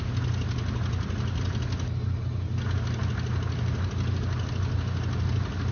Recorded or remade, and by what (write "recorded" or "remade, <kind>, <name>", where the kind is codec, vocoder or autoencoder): recorded